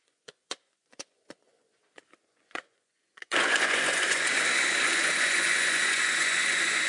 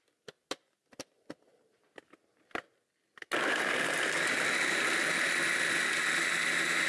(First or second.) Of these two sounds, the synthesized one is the first